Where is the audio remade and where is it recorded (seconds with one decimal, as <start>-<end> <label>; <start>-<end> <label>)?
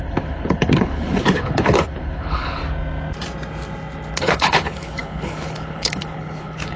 0.0-2.6 remade; 2.6-4.2 recorded; 4.2-6.8 remade